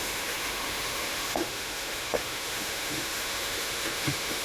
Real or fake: fake